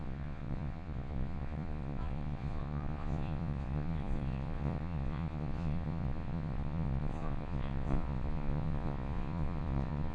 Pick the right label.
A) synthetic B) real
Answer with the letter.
A